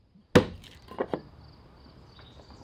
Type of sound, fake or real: real